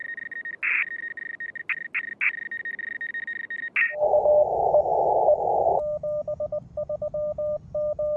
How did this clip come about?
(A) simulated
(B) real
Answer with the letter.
B